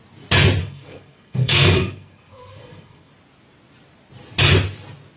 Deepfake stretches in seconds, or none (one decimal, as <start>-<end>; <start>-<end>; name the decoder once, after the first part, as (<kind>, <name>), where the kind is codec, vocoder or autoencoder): 0.6-3.1 (codec, SNAC)